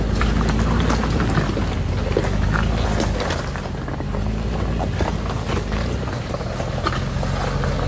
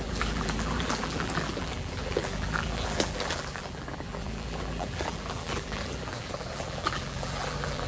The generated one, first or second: second